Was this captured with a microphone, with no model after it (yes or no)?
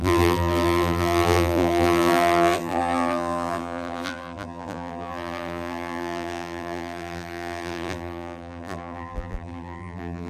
no